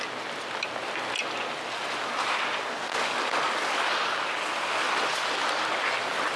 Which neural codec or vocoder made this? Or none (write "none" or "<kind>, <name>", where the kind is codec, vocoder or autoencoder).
none